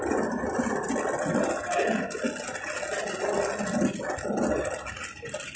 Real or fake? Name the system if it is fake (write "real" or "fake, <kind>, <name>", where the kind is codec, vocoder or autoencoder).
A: real